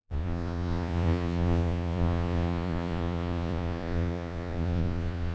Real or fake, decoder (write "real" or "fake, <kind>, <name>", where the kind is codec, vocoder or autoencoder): fake, vocoder, Vocos